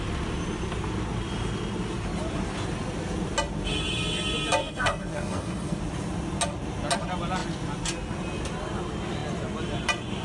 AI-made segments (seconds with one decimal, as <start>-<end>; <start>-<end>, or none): 4.6-5.8

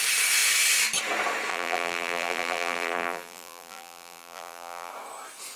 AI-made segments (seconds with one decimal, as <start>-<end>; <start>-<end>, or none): 1.5-4.9

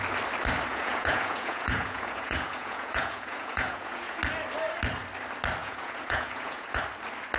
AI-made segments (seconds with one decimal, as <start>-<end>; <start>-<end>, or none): 0.7-4.2; 5.6-6.8

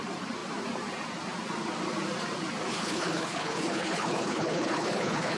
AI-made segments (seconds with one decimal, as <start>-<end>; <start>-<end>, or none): 2.7-5.4